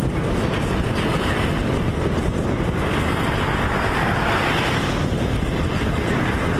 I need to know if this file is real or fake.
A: real